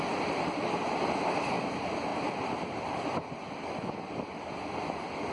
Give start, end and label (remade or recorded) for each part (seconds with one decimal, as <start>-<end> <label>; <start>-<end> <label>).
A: 0.0-5.3 recorded